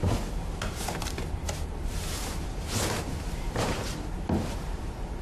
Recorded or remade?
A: remade